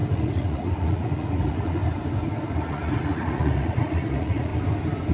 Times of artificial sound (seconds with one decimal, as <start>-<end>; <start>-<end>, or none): 0.0-1.8; 2.6-4.5

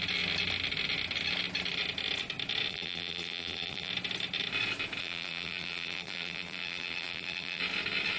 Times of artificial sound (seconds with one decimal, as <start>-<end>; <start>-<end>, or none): 2.7-3.9; 5.0-7.6

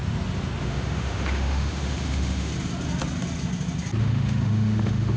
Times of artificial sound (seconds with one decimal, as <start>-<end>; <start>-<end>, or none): 0.6-2.5; 4.0-5.2